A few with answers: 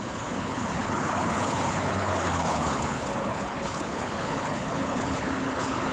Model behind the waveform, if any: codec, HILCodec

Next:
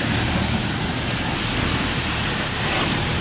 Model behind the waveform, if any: none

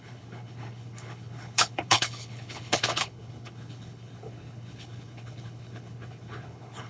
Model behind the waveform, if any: codec, HILCodec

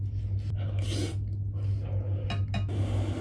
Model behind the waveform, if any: none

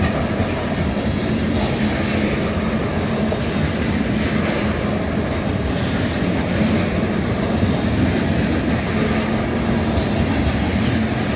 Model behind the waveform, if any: none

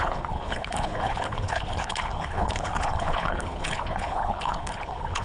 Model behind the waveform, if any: codec, HILCodec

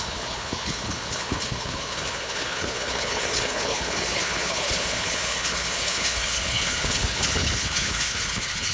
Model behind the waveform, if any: codec, HILCodec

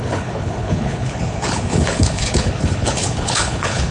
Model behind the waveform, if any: codec, HILCodec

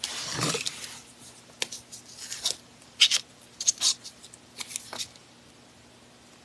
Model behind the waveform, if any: none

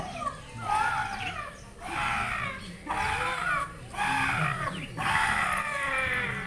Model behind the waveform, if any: none